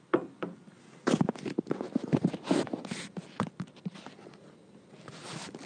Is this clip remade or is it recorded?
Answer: recorded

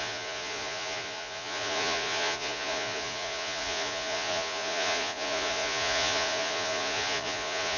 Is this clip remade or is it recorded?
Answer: remade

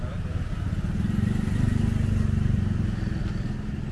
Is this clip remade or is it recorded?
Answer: recorded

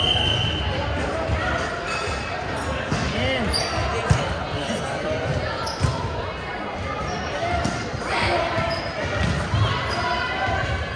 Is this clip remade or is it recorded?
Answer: recorded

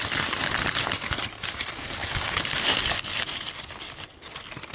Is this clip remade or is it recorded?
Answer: recorded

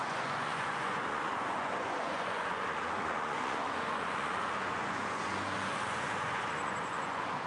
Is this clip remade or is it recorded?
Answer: remade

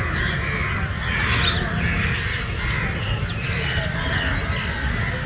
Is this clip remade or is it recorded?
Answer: recorded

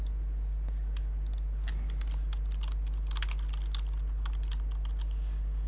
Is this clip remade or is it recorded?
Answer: recorded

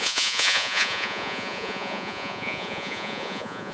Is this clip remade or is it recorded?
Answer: remade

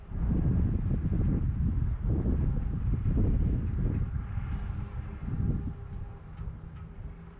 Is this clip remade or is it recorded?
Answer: recorded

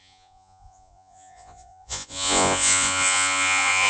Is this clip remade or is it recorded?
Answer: remade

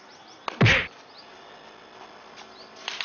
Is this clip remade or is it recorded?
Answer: recorded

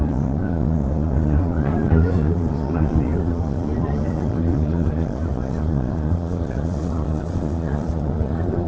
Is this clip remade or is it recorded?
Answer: remade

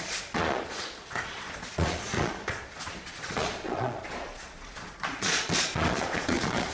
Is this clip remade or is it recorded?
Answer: remade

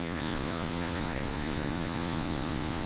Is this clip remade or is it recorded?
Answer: remade